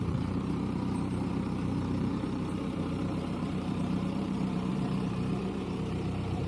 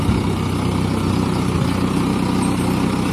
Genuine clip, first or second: second